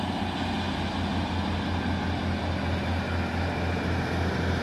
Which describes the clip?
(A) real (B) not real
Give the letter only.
A